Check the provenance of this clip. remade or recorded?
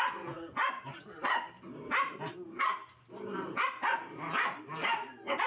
recorded